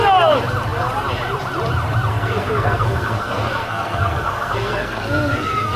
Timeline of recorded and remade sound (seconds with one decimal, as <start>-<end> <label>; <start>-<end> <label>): 0.0-2.1 recorded; 2.1-5.8 remade